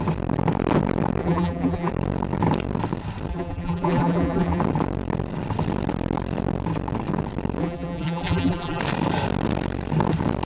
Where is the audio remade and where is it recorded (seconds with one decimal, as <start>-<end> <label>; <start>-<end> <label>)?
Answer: 0.0-1.2 recorded; 1.2-1.9 remade; 1.9-3.3 recorded; 3.3-4.6 remade; 4.6-7.6 recorded; 7.6-8.8 remade; 8.8-10.4 recorded

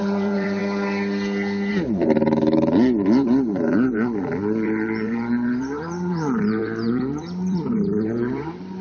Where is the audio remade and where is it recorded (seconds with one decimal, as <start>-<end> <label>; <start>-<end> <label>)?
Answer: 0.0-0.6 remade; 0.6-1.7 recorded; 1.7-8.8 remade

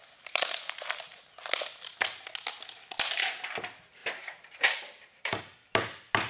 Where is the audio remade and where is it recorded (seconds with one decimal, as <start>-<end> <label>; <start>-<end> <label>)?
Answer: 0.0-0.6 remade; 0.6-4.0 recorded; 4.0-5.4 remade; 5.4-6.3 recorded

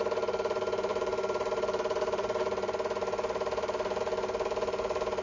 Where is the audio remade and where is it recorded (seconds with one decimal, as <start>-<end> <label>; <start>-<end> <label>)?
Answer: 0.0-5.2 remade

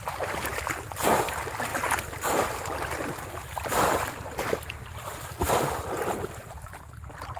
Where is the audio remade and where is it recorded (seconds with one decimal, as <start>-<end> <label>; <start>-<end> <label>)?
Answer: 0.0-7.4 recorded

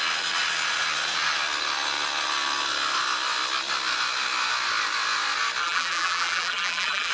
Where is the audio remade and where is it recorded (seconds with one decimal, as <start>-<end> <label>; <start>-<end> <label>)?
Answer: 0.0-5.6 recorded; 5.6-7.1 remade

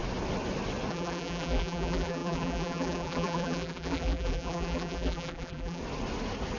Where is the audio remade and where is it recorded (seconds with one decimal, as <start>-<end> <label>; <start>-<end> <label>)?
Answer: 0.0-0.9 recorded; 0.9-5.8 remade; 5.8-6.6 recorded

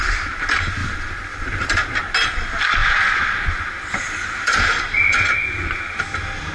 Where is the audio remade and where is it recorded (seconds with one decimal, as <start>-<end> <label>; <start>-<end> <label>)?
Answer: 0.0-0.8 recorded; 0.8-2.0 remade; 2.0-2.8 recorded; 2.8-4.8 remade; 4.8-6.5 recorded